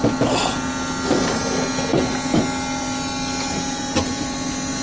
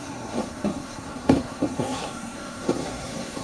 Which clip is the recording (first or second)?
first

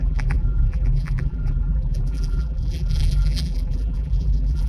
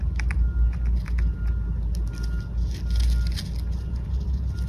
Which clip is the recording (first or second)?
second